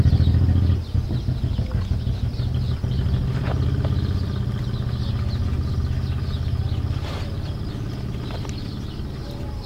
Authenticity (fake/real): real